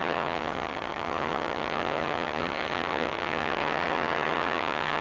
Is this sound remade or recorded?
remade